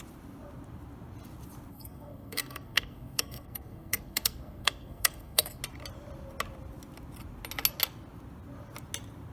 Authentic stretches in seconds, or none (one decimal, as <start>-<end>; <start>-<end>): 0.0-1.7; 5.6-9.3